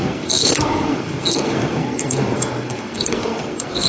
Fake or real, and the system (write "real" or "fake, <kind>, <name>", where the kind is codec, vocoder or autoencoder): fake, codec, SNAC